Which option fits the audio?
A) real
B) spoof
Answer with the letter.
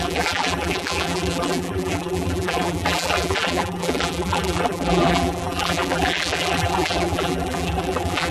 B